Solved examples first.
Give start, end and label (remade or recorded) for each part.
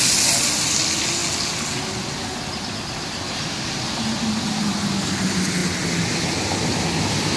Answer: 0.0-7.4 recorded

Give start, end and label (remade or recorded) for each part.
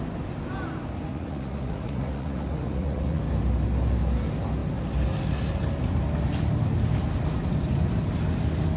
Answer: 0.0-1.1 recorded; 1.1-3.2 remade; 3.2-8.8 recorded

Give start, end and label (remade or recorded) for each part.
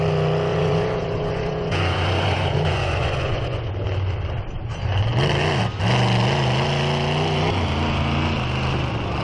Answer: 0.0-0.5 recorded; 0.5-3.7 remade; 3.7-9.2 recorded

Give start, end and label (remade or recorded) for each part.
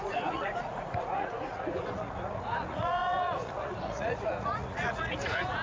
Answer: 0.0-5.6 remade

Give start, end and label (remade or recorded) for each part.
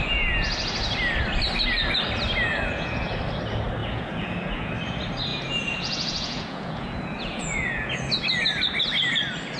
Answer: 0.0-2.5 recorded; 2.5-3.2 remade; 3.2-3.8 recorded; 3.8-4.7 remade; 4.7-5.3 recorded; 5.3-8.1 remade; 8.1-9.6 recorded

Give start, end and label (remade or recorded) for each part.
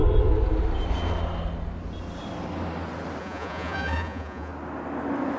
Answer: 0.0-3.2 recorded; 3.2-4.5 remade; 4.5-5.4 recorded